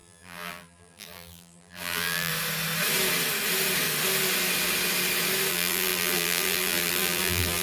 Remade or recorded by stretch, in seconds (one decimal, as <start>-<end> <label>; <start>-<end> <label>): 0.0-2.3 remade; 2.3-5.5 recorded; 5.5-7.6 remade